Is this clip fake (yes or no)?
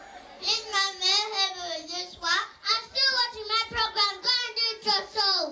no